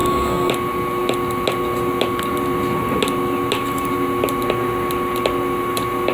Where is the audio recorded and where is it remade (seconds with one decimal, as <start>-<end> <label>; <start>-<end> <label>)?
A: 0.0-0.5 remade; 0.5-6.1 recorded